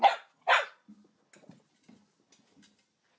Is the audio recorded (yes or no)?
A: yes